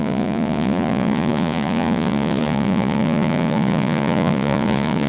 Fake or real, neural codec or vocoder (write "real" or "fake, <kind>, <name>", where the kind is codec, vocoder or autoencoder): fake, vocoder, Vocos